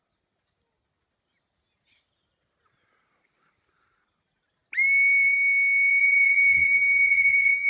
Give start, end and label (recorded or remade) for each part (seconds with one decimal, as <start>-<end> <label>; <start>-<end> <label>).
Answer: 0.0-6.0 recorded; 6.0-7.7 remade